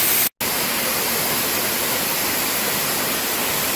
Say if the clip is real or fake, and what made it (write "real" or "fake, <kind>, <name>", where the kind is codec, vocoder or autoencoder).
real